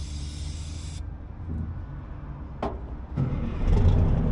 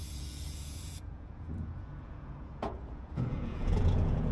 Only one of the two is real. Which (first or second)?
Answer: first